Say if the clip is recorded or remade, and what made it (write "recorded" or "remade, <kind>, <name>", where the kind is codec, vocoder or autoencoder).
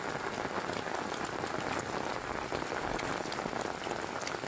recorded